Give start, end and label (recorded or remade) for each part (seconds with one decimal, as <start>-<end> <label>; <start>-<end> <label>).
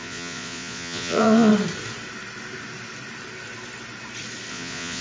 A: 0.0-1.5 remade; 1.5-4.5 recorded; 4.5-5.0 remade